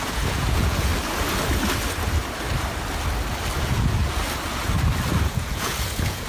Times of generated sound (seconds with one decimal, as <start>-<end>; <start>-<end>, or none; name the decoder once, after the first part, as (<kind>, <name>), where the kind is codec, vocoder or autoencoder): 0.0-0.9 (vocoder, Vocos); 3.6-4.0; 5.2-6.3